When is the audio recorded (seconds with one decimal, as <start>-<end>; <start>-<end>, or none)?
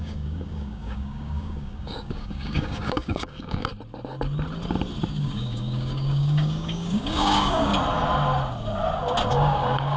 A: 3.7-5.1; 7.7-9.3